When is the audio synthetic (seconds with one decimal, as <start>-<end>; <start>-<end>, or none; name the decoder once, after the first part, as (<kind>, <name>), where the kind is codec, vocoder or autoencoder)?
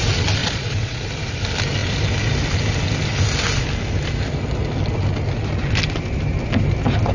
0.4-1.0 (vocoder, Vocos)